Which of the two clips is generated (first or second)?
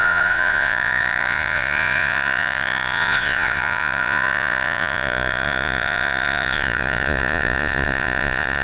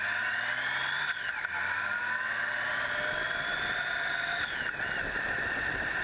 first